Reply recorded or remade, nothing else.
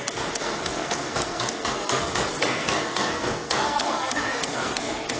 remade